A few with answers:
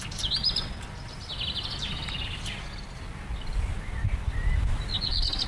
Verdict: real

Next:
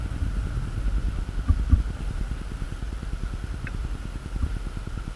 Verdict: real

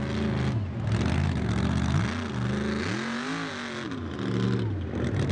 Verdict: real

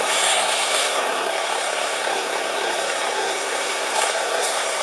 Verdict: fake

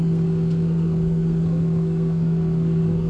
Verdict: fake